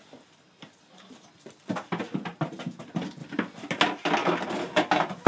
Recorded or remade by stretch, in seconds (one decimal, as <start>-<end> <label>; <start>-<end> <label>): 0.0-5.3 recorded